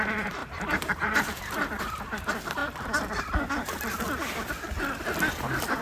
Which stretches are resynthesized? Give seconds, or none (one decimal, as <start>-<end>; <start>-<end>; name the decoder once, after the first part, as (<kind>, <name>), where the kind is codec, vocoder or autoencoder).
0.0-2.6 (vocoder, BigVGAN v2)